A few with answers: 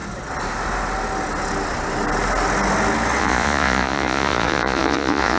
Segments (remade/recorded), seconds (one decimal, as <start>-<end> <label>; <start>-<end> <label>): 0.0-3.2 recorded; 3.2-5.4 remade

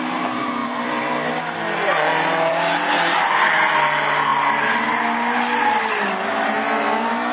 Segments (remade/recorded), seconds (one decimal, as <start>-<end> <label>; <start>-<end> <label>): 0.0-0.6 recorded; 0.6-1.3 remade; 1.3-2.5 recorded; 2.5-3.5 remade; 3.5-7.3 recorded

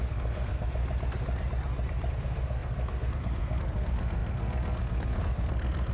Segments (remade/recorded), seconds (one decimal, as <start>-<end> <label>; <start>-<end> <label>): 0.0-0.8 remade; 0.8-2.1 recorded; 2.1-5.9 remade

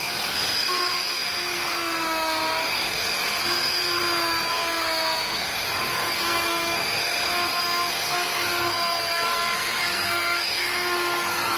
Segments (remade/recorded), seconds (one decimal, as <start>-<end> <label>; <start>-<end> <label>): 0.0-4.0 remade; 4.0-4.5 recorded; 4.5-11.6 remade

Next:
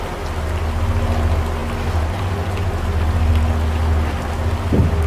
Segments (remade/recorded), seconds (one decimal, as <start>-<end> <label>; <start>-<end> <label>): 0.0-5.1 recorded

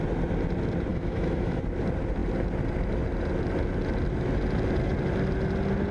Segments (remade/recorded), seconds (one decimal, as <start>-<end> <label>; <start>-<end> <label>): 0.0-0.9 recorded; 0.9-1.6 remade; 1.6-5.9 recorded

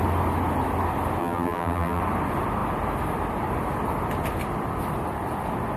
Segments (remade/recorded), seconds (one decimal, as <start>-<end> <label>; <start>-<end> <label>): 0.0-1.2 recorded; 1.2-2.0 remade; 2.0-5.8 recorded